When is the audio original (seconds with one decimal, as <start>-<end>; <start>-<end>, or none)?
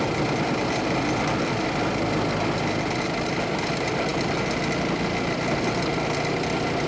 0.0-6.9